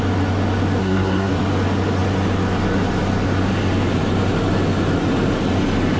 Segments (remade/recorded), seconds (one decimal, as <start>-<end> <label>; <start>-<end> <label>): 0.0-0.8 recorded; 0.8-1.3 remade; 1.3-6.0 recorded